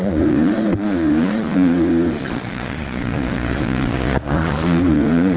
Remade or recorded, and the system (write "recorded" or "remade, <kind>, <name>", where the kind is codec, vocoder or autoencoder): remade, vocoder, Vocos